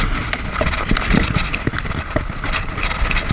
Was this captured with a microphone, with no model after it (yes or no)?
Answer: yes